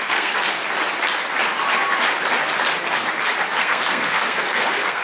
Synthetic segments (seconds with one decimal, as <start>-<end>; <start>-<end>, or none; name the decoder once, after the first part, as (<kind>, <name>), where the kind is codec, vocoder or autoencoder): 0.0-0.6 (codec, SNAC); 3.6-5.0

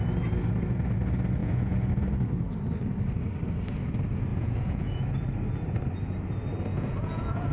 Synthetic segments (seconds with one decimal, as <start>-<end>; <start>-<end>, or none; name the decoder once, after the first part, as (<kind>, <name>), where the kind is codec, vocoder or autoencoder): 1.4-1.9 (vocoder, Vocos); 4.3-5.0; 6.7-7.5

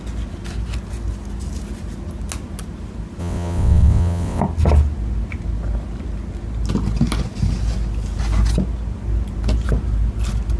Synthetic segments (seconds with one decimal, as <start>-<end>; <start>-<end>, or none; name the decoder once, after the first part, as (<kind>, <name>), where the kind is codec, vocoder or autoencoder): 3.2-4.4 (vocoder, WaveNeXt)

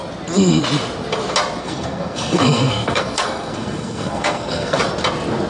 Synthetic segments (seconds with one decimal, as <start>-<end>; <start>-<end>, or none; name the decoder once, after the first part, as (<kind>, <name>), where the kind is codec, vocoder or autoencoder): 1.6-4.8 (codec, SNAC)

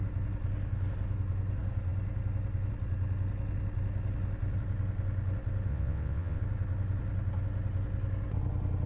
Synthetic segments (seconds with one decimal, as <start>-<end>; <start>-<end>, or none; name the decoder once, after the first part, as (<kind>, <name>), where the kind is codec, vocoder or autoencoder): 5.7-6.4 (vocoder, WaveNeXt)

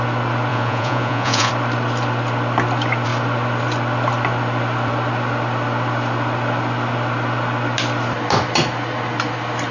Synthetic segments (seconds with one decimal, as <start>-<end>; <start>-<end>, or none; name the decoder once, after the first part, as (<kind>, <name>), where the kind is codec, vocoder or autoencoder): 0.5-1.5 (vocoder, Vocos)